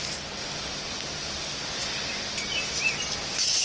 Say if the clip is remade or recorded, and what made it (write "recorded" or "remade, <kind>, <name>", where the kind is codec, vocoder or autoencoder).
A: recorded